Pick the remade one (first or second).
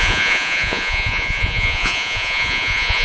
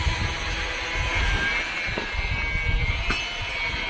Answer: first